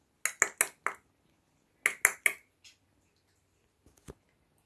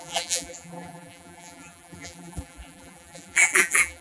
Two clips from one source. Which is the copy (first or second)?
second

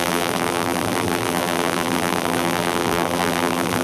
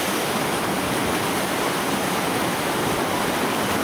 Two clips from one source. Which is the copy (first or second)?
first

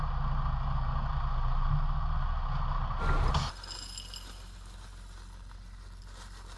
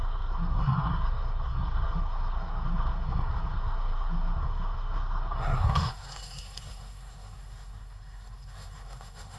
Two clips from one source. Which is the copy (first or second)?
second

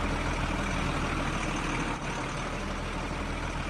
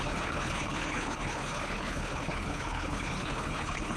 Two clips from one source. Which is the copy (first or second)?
second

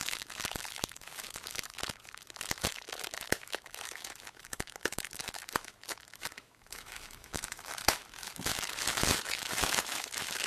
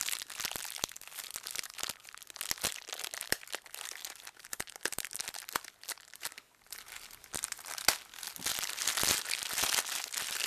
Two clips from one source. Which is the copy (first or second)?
first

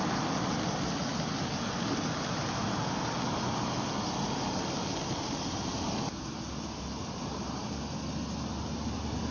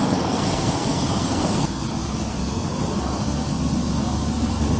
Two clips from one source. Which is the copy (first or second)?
second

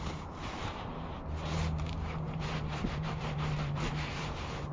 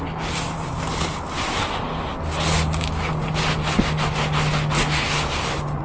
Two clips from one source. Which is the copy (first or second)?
first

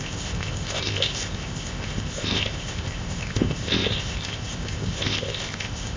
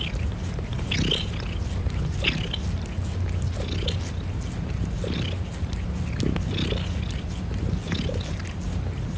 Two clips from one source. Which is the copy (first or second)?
first